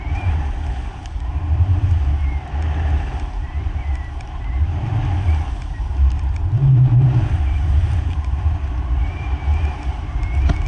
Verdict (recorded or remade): recorded